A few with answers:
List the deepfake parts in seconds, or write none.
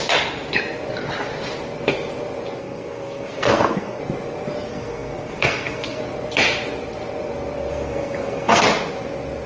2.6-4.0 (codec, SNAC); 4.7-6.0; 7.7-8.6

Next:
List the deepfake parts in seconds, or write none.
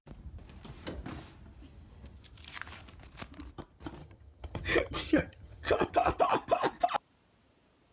4.0-6.2 (vocoder, HiFi-GAN)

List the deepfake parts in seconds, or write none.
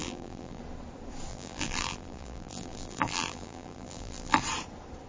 0.0-0.6 (vocoder, BigVGAN v2); 1.3-4.4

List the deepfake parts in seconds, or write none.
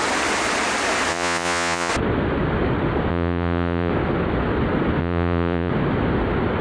1.1-1.9 (vocoder, Vocos); 3.1-3.9; 5.0-5.7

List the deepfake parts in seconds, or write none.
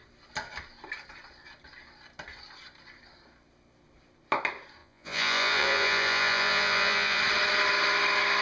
4.8-7.2 (vocoder, Vocos)